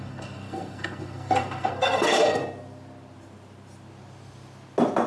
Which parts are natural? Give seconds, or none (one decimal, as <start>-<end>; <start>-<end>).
2.4-5.1